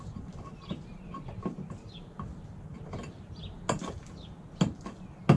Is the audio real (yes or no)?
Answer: yes